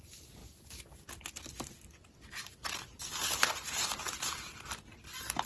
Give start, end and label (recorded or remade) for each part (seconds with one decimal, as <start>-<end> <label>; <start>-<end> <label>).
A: 0.0-5.5 recorded